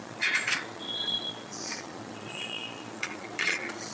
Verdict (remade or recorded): remade